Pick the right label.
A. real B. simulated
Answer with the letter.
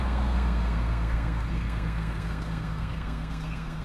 B